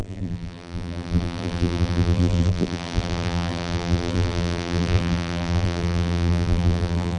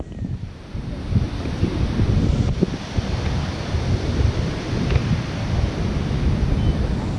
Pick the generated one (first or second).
first